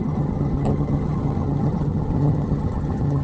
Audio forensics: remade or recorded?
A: remade